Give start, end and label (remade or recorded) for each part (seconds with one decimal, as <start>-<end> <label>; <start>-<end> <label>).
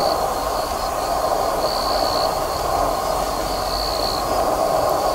0.0-3.1 remade; 3.1-5.1 recorded